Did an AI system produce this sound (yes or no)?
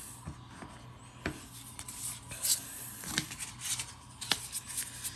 no